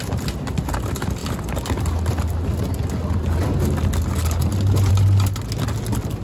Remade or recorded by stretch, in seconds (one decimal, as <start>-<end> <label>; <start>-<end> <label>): 0.0-6.2 recorded